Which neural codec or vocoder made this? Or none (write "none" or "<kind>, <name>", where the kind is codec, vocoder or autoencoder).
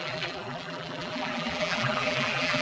vocoder, BigVGAN v2